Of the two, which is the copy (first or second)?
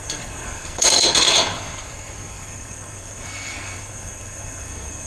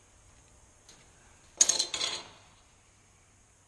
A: first